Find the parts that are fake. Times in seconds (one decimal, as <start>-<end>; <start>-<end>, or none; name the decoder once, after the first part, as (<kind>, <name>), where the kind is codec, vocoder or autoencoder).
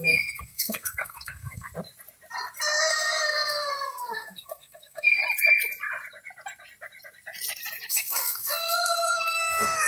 0.0-1.7 (codec, SNAC); 2.9-5.2; 7.9-9.9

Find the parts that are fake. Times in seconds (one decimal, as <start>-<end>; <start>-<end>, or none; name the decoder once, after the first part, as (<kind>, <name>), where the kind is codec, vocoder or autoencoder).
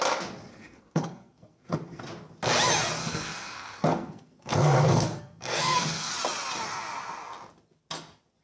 0.5-2.0 (codec, SNAC); 3.0-6.1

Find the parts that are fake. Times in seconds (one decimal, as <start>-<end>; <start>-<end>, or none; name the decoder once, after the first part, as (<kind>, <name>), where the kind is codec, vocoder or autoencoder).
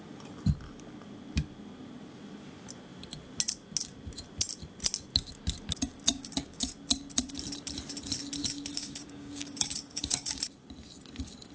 6.1-6.7 (codec, DAC); 8.7-10.4